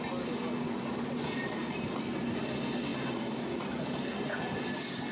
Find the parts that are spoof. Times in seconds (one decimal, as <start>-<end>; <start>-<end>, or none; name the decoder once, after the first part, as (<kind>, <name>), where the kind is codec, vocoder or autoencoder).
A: none